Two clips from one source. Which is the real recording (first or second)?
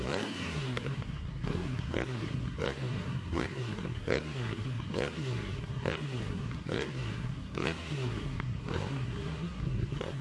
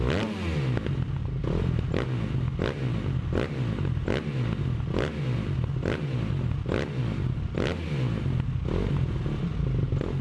second